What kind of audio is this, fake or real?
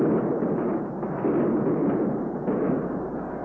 real